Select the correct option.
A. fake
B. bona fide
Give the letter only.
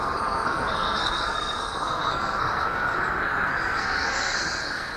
A